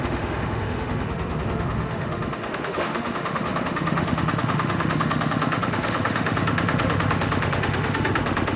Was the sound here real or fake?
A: fake